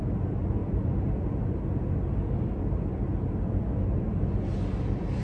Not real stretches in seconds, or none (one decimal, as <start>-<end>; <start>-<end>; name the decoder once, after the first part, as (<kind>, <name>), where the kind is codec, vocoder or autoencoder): none